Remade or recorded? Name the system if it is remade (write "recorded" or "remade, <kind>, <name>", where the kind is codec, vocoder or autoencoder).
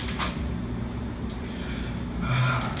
recorded